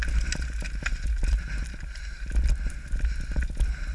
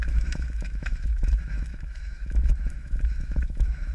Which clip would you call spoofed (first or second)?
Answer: second